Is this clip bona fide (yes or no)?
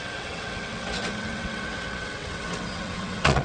no